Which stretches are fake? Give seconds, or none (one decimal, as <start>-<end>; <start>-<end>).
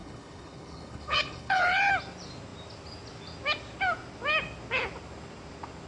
0.0-1.9